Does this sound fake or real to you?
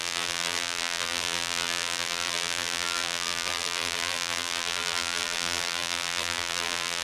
fake